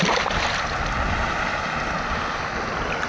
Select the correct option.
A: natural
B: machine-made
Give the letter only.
A